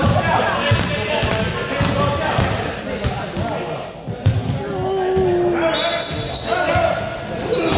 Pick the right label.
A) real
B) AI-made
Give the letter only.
A